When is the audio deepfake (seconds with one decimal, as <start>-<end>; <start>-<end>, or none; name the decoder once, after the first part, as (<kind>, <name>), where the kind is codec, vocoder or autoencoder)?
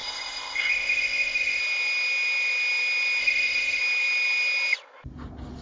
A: 0.0-1.6 (codec, ZipCodec); 3.2-3.8